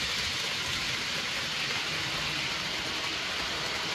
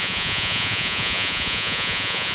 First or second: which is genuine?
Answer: first